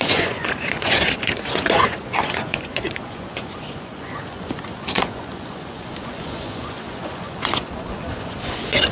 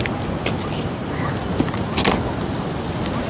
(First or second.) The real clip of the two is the second